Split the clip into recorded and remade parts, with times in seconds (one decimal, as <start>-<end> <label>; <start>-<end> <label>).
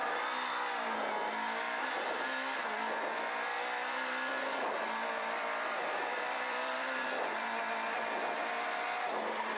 0.0-4.3 recorded; 4.3-7.6 remade; 7.6-9.6 recorded